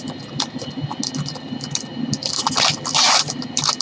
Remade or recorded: recorded